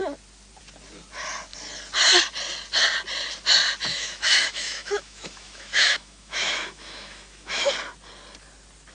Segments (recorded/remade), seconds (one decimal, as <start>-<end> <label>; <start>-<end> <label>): 0.0-3.9 recorded; 3.9-7.7 remade; 7.7-8.9 recorded